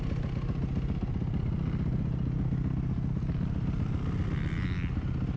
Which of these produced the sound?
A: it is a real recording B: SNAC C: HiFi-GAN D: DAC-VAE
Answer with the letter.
A